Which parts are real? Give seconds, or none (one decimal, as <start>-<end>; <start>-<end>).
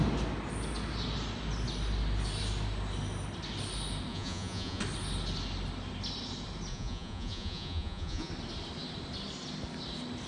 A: 0.0-4.1; 4.8-6.7; 8.3-10.3